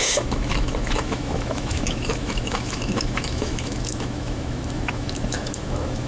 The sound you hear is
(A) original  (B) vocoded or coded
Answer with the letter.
B